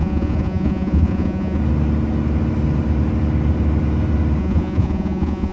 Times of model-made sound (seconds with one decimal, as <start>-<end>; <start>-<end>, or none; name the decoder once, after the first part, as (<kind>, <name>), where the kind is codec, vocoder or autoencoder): 0.0-1.6 (vocoder, Vocos); 4.4-5.5